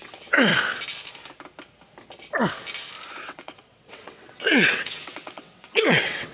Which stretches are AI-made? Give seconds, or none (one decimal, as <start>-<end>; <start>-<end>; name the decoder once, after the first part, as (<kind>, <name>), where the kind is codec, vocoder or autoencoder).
0.0-0.5 (vocoder, WaveNeXt); 3.2-6.3